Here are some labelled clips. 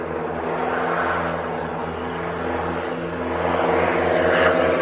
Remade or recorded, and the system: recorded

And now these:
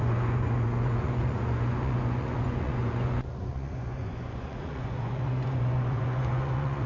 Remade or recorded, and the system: remade, vocoder, Vocos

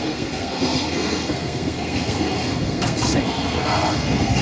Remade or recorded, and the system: remade, codec, SNAC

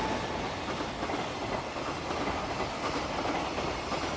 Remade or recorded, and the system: recorded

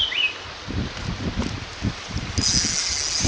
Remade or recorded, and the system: recorded